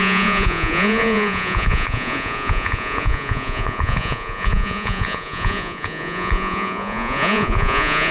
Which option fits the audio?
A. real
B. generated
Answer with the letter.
B